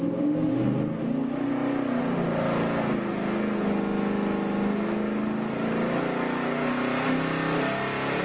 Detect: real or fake real